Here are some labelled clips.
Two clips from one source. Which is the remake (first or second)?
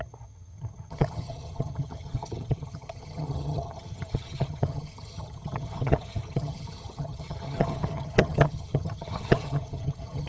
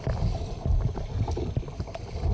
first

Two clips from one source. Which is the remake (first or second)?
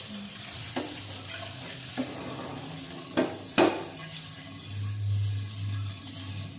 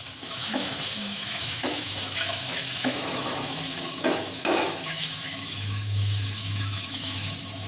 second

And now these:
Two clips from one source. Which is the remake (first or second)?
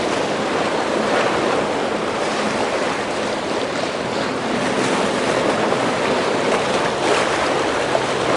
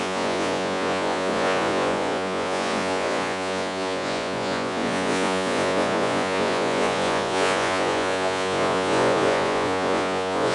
second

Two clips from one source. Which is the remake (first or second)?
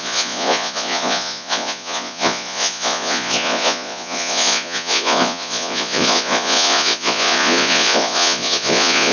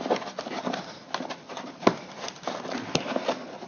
first